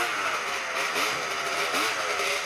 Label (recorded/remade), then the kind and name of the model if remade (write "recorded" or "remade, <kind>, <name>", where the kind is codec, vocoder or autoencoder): recorded